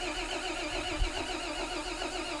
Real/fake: real